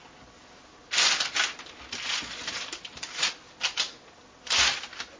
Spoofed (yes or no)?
no